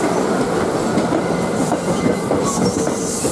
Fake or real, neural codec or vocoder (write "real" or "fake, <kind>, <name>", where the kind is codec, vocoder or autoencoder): real